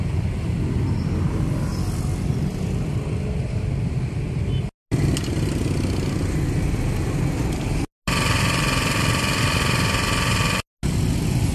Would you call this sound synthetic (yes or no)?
no